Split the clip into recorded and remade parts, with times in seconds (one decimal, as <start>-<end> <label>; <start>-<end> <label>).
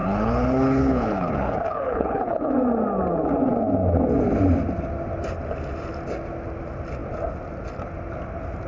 0.0-2.5 remade; 2.5-8.7 recorded